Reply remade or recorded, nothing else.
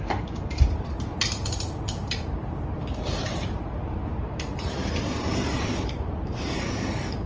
remade